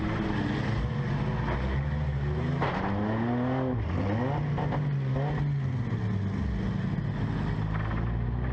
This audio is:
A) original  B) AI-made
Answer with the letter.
A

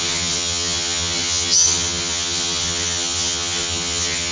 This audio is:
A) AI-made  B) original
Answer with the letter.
A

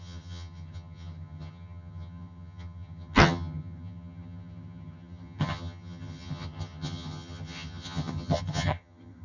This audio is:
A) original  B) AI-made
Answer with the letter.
B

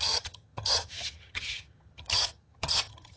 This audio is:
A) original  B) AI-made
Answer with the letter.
B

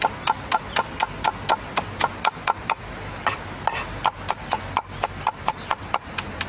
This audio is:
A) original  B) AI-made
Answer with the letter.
A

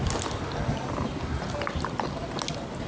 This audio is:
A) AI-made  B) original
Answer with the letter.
B